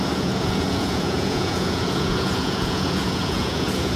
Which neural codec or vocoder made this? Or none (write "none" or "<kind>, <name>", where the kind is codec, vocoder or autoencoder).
vocoder, Vocos